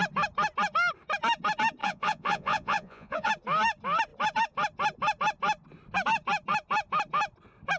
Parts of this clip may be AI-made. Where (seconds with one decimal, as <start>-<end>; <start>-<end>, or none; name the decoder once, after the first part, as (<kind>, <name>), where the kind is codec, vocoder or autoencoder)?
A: 1.8-3.3 (vocoder, Vocos)